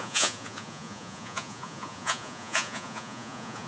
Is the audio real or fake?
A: fake